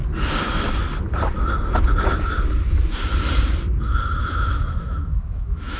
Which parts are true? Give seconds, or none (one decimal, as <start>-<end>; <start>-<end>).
0.0-4.2